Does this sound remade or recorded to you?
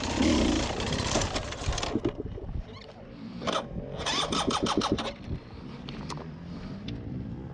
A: recorded